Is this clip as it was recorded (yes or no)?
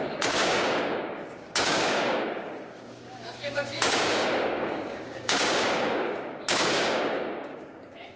no